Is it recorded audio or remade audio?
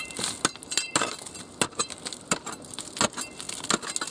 recorded